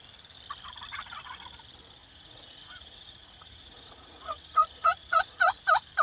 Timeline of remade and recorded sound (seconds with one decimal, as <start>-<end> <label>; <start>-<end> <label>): 0.0-2.0 recorded; 2.0-5.6 remade; 5.6-6.0 recorded